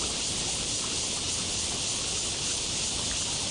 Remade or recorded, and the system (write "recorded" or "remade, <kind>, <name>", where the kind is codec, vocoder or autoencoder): recorded